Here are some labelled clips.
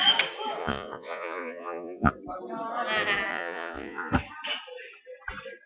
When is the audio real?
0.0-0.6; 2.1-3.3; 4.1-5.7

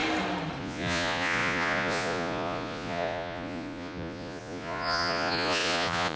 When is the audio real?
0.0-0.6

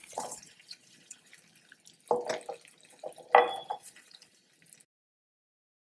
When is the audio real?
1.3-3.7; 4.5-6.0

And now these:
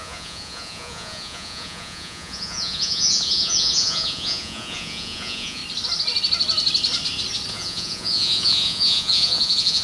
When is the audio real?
5.6-7.5

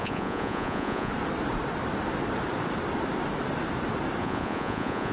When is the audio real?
1.1-4.2

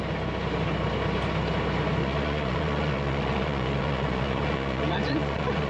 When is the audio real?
0.0-2.0

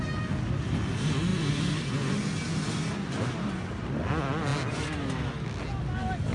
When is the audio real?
0.0-6.3